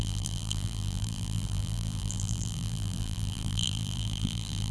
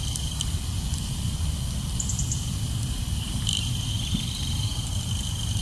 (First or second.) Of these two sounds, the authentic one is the second